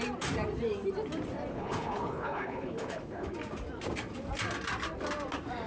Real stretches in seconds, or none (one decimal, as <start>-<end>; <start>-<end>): 0.0-1.5; 3.3-5.7